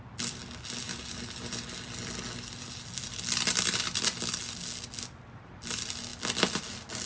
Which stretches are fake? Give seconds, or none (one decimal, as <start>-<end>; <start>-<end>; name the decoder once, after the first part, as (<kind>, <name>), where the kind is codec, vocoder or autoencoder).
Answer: none